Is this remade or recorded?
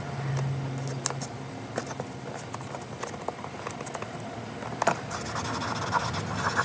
recorded